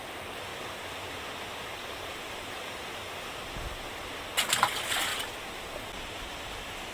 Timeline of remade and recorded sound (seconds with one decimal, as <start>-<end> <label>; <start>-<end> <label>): 0.0-6.9 recorded